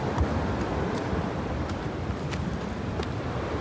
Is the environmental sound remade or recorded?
recorded